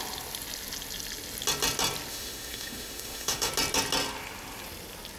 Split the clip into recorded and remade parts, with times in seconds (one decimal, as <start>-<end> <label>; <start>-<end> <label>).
0.0-2.1 recorded; 2.1-3.5 remade; 3.5-5.2 recorded